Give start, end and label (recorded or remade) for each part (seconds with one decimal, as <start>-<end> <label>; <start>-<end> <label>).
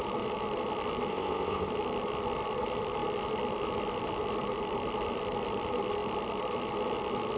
0.0-1.1 recorded; 1.1-1.7 remade; 1.7-7.4 recorded